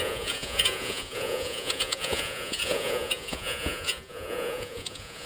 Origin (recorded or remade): remade